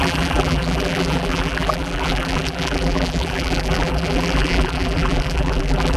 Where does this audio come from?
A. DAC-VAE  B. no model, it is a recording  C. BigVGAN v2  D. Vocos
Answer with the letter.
C